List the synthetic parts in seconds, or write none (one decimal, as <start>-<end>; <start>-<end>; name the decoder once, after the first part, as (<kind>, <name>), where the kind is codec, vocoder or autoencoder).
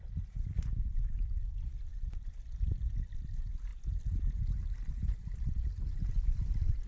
3.7-4.4 (vocoder, BigVGAN v2); 5.0-6.9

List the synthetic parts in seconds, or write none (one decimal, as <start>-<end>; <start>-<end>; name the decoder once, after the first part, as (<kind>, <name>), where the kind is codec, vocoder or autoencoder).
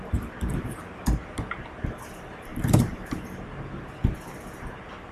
0.5-1.0 (vocoder, BigVGAN v2); 2.5-3.7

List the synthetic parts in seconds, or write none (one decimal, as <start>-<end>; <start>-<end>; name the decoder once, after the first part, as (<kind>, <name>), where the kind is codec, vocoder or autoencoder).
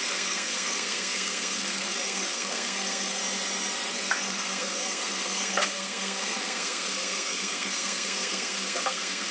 0.0-3.2 (codec, SNAC); 3.9-9.3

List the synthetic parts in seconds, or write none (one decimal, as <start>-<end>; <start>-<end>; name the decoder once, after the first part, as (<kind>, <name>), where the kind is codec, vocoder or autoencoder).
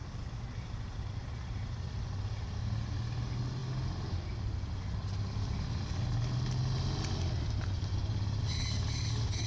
none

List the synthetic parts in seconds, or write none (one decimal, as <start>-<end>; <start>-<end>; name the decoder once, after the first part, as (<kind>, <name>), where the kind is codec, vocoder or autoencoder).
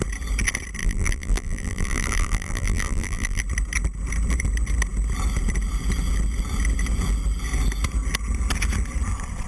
0.8-3.4 (vocoder, BigVGAN v2)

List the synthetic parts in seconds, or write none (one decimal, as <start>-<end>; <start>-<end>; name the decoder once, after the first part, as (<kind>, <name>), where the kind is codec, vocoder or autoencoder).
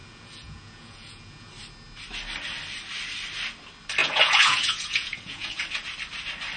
0.0-1.5 (vocoder, Vocos); 4.0-5.6